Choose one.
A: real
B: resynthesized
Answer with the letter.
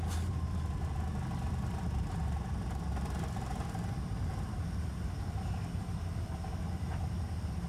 B